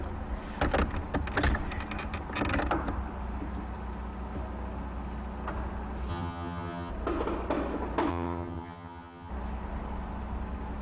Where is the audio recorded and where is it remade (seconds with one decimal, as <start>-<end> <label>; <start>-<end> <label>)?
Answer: 0.0-6.1 recorded; 6.1-6.9 remade; 6.9-8.1 recorded; 8.1-9.3 remade; 9.3-10.8 recorded